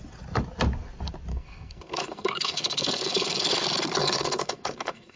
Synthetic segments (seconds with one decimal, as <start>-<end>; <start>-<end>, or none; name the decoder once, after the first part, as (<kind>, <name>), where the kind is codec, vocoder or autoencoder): 1.3-3.5 (codec, SNAC); 4.0-5.2